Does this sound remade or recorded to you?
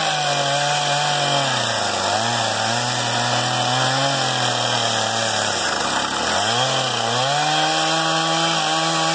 recorded